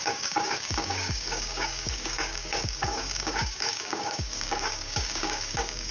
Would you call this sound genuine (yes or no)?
no